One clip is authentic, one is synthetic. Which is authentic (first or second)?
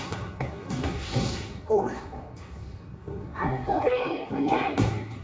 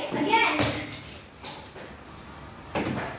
second